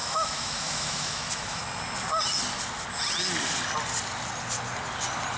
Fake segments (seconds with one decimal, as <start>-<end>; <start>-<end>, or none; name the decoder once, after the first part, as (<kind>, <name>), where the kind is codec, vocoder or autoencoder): 0.0-1.6 (autoencoder, DAC-VAE)